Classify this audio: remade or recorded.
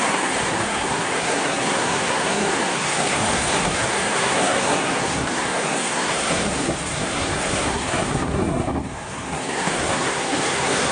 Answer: remade